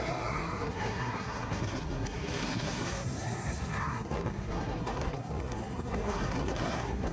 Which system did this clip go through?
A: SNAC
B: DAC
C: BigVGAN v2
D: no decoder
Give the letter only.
A